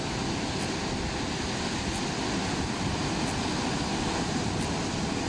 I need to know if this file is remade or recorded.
recorded